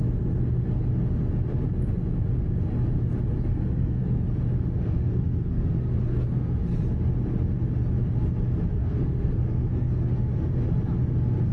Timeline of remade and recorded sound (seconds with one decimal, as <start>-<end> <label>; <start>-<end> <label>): 0.0-3.5 recorded; 3.5-4.2 remade; 4.2-4.8 recorded; 4.8-6.6 remade; 6.6-8.8 recorded; 8.8-9.9 remade; 9.9-11.5 recorded